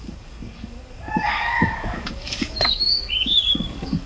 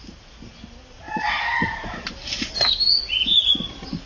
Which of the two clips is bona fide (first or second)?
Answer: second